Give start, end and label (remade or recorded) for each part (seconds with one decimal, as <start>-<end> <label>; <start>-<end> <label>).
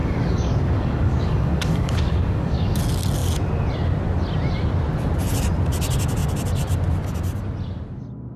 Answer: 0.0-2.8 remade; 2.8-8.4 recorded